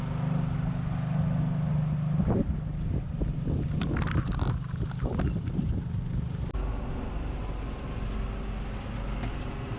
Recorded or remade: recorded